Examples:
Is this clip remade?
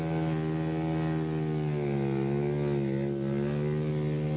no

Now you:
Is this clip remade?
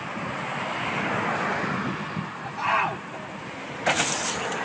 no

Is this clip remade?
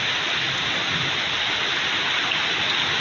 no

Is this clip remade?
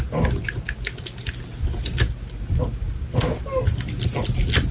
no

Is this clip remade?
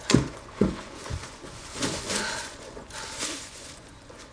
yes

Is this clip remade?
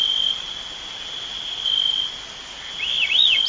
no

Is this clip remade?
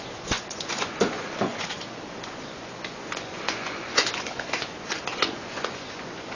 yes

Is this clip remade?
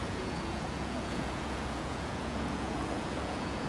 yes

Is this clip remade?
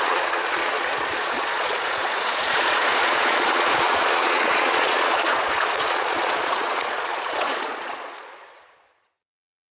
yes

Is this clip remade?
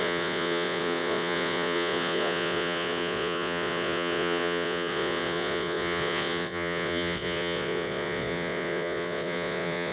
yes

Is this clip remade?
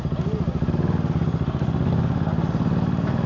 no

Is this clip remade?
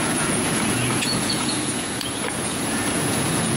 yes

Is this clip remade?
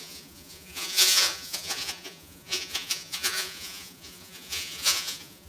yes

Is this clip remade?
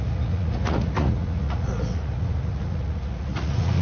yes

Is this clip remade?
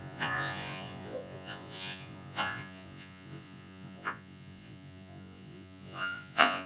yes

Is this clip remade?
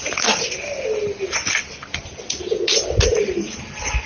no